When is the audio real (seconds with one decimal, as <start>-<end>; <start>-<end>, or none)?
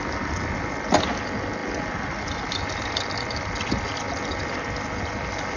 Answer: 0.0-5.6